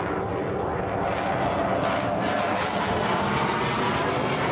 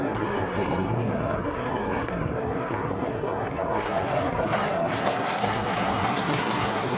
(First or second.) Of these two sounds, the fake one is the second